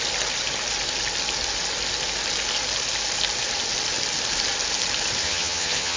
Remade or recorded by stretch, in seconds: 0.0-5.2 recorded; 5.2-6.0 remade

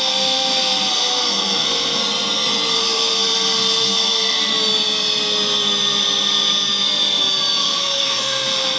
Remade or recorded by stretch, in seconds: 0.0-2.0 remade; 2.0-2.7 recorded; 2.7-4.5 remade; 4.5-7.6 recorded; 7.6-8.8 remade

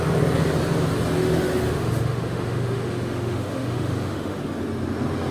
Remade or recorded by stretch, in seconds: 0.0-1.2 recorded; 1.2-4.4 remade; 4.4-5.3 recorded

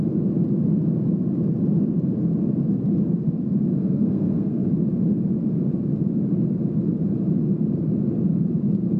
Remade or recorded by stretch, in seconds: 0.0-3.7 recorded; 3.7-4.7 remade; 4.7-9.0 recorded

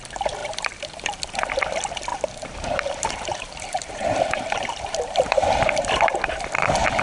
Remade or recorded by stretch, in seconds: 0.0-0.4 recorded; 0.4-1.2 remade; 1.2-2.1 recorded; 2.1-6.3 remade; 6.3-7.0 recorded